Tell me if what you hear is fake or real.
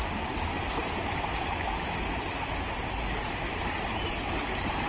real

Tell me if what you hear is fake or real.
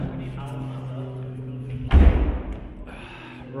real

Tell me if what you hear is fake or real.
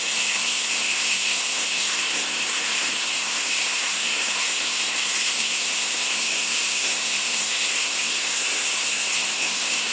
fake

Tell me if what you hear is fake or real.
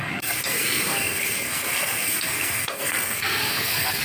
fake